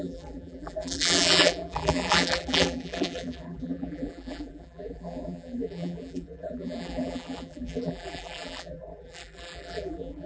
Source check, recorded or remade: remade